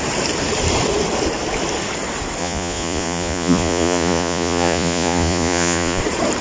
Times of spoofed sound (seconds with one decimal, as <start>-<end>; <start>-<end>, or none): 2.4-6.0